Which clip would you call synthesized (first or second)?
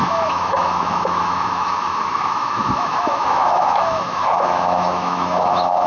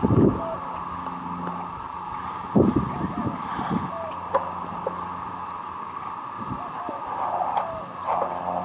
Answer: first